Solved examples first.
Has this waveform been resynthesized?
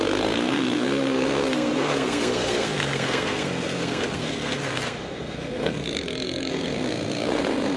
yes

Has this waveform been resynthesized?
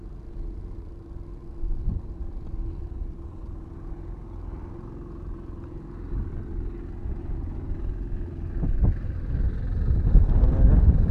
no